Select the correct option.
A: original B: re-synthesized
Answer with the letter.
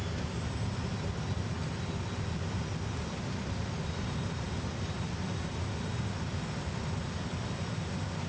A